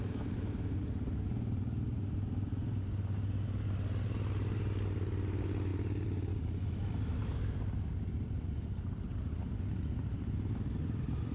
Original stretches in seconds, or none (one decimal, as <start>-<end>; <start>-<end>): 0.0-11.3